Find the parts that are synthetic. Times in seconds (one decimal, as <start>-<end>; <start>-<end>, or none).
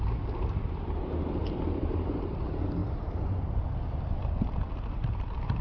1.4-2.4; 2.8-4.2